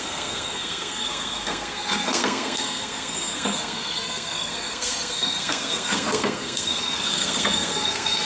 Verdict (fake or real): fake